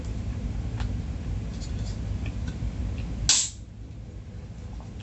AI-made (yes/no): no